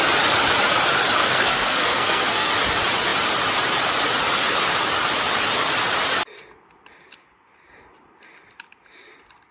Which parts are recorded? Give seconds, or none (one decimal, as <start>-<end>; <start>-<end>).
0.0-1.2; 2.5-9.5